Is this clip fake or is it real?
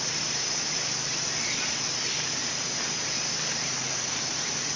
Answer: real